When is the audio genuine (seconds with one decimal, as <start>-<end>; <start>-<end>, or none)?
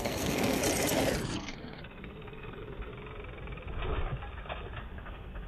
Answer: 0.6-1.2; 2.9-4.8